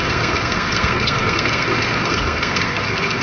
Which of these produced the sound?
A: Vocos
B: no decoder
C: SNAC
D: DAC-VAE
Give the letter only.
C